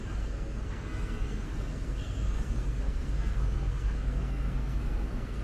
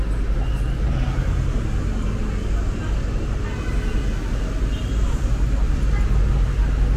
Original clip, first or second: second